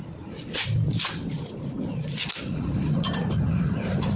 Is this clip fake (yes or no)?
yes